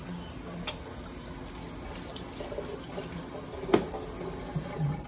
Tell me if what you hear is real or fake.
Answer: real